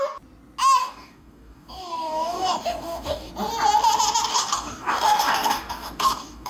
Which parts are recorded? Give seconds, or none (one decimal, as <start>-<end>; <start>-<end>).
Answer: 0.0-0.8; 3.3-4.3